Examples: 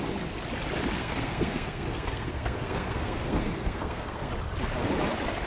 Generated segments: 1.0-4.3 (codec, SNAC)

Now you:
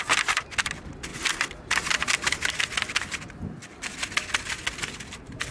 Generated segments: 3.6-4.1 (vocoder, BigVGAN v2)